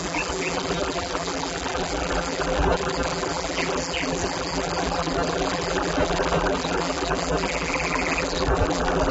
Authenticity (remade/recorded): remade